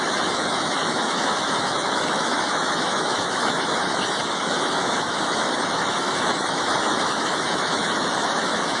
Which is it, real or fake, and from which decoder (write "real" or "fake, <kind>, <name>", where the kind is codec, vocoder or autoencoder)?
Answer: fake, autoencoder, DAC-VAE